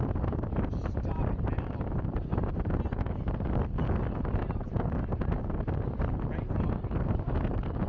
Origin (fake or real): real